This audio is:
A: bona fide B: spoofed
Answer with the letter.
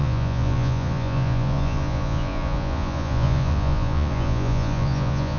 B